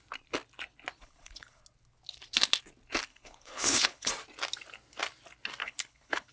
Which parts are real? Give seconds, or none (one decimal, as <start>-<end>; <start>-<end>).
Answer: 0.0-1.0; 1.6-3.1; 4.1-5.6